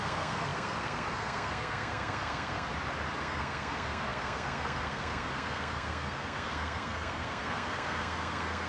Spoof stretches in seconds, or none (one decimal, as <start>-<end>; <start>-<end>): 0.0-2.7; 3.2-8.7